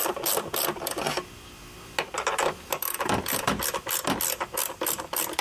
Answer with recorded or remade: recorded